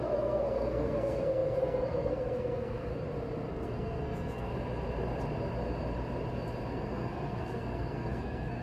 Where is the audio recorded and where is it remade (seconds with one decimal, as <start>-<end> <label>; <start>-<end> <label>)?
0.0-2.9 remade; 2.9-3.5 recorded; 3.5-4.5 remade; 4.5-6.7 recorded; 6.7-8.6 remade